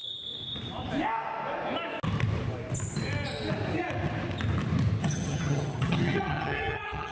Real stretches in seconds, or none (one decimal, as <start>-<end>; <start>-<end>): 0.0-5.0